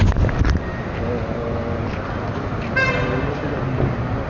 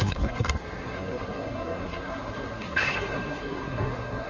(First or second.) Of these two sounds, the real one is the first